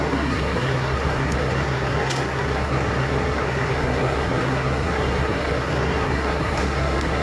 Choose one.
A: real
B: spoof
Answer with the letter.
B